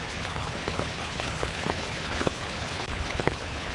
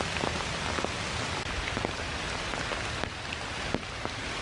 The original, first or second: second